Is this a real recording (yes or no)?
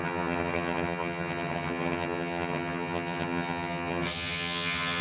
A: no